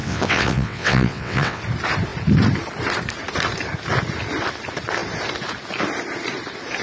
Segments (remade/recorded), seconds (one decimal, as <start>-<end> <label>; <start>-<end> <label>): 0.0-1.6 remade; 1.6-6.8 recorded